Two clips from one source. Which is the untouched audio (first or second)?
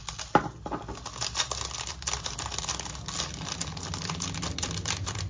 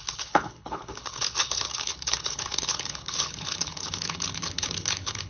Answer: first